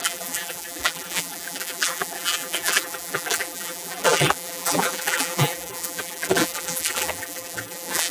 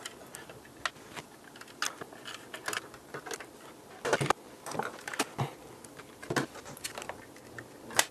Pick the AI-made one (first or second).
first